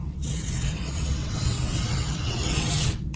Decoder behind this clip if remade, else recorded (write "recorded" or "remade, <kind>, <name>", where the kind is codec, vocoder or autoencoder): remade, vocoder, WaveNeXt